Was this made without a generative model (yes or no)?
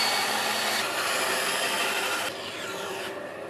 yes